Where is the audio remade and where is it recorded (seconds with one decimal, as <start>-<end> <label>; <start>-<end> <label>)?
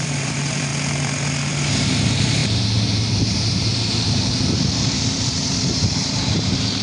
0.0-0.7 remade; 0.7-1.8 recorded; 1.8-6.8 remade